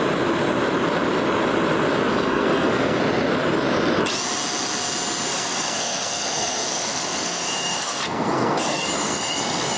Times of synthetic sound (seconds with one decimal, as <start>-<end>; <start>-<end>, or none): 2.1-3.0; 5.3-9.4